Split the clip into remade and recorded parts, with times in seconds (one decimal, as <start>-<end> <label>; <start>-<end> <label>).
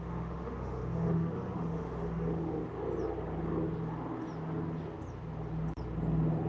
0.0-2.6 remade; 2.6-6.5 recorded